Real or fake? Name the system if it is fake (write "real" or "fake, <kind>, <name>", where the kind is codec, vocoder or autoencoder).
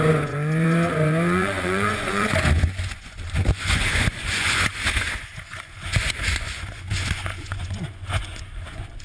fake, vocoder, Vocos